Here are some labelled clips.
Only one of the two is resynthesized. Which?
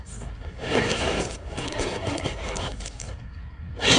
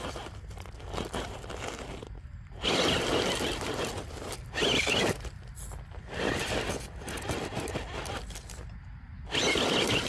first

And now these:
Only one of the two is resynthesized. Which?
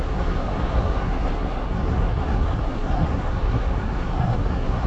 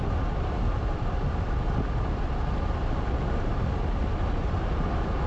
first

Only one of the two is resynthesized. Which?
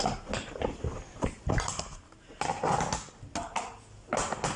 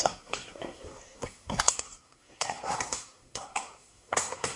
second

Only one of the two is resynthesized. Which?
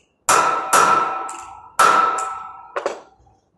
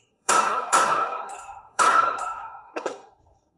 second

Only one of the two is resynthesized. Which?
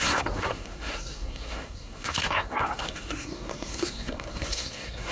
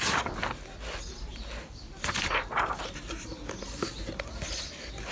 first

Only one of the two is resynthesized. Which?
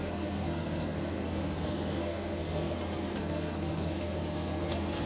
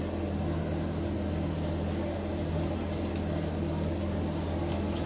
first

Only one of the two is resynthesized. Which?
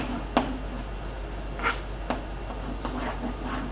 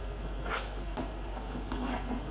second